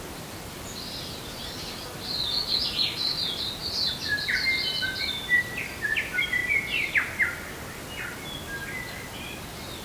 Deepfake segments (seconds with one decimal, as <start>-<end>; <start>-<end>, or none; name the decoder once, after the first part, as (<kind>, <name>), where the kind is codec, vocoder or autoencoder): 0.0-3.6 (vocoder, BigVGAN v2); 5.1-6.4; 9.4-9.8